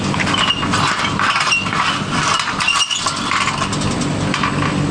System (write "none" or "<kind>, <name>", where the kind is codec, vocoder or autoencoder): none